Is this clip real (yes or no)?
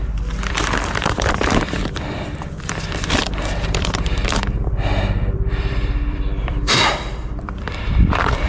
no